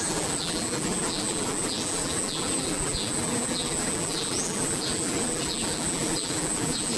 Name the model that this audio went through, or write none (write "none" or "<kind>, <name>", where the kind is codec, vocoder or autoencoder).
vocoder, BigVGAN v2